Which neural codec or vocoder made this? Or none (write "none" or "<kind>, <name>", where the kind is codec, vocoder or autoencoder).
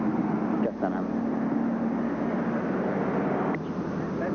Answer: none